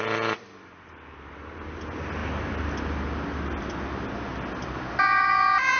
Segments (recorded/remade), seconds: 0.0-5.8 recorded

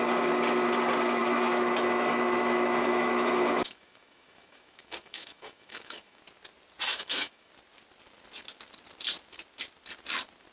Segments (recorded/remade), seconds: 0.0-1.2 recorded; 1.2-6.2 remade; 6.2-6.9 recorded; 6.9-7.5 remade; 7.5-10.5 recorded

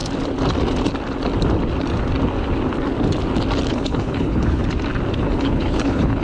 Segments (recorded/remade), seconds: 0.0-3.7 recorded; 3.7-4.6 remade; 4.6-5.2 recorded; 5.2-6.2 remade

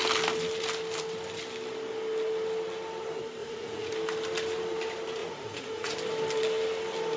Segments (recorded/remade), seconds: 0.0-3.4 recorded; 3.4-3.9 remade; 3.9-5.2 recorded; 5.2-5.9 remade; 5.9-7.2 recorded

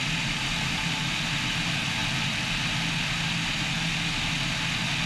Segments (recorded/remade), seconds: 0.0-5.1 recorded

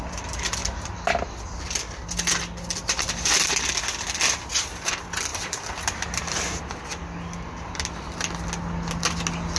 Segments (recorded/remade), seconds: 0.0-5.3 recorded; 5.3-6.6 remade; 6.6-9.6 recorded